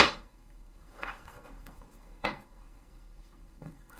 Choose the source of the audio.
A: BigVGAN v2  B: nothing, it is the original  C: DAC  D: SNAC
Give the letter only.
D